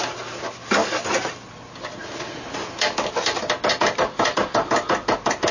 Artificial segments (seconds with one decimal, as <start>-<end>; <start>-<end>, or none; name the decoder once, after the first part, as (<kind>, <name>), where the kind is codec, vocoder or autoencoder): none